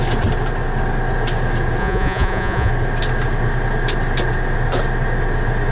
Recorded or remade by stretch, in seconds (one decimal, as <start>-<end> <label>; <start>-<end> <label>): 0.0-1.8 recorded; 1.8-2.7 remade; 2.7-5.7 recorded